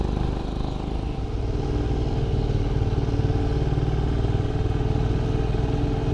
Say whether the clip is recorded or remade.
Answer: recorded